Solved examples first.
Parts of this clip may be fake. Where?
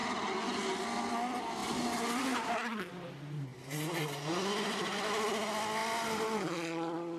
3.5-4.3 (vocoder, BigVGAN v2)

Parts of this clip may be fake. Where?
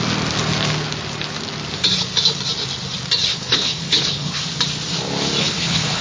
3.3-4.4 (codec, HILCodec); 5.4-6.0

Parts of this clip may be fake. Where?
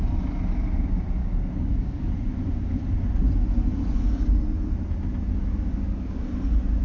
1.2-2.1 (codec, DAC)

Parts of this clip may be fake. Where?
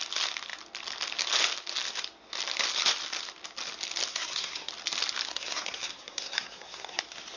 4.1-4.7 (codec, SNAC); 5.3-7.0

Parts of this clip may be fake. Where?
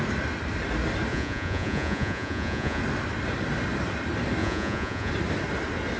1.1-2.8 (vocoder, Vocos); 4.4-5.1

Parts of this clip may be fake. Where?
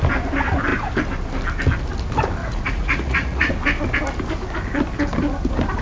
2.4-3.5 (vocoder, Vocos)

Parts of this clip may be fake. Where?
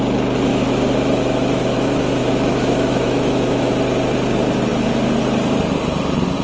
0.5-3.7 (autoencoder, DAC-VAE)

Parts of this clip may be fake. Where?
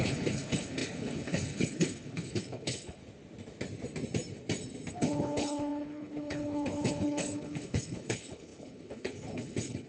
0.0-3.0 (codec, HILCodec); 4.9-9.9